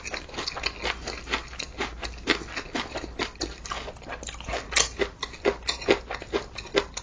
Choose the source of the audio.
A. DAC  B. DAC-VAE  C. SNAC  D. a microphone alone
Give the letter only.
D